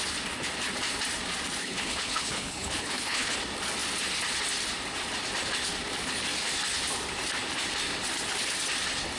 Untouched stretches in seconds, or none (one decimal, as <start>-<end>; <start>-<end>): 0.0-1.6; 3.4-9.2